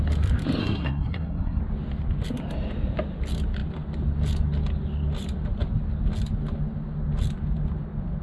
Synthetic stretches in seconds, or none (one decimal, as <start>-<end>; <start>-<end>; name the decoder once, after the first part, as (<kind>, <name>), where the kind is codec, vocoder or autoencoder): 0.6-1.6 (codec, SNAC)